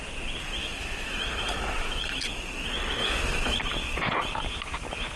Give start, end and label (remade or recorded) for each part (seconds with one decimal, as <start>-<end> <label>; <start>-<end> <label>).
0.0-0.6 recorded; 0.6-2.2 remade; 2.2-3.0 recorded; 3.0-3.6 remade; 3.6-5.2 recorded